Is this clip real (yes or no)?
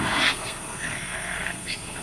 no